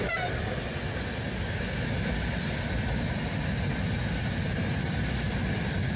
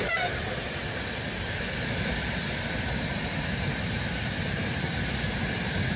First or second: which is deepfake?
second